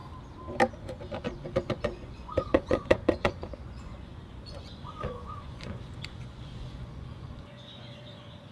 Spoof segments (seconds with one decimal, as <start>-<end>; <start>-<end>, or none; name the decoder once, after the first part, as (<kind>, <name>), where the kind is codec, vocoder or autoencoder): 0.7-8.5 (vocoder, Vocos)